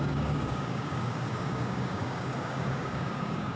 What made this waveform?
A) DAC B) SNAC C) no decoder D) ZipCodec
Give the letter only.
A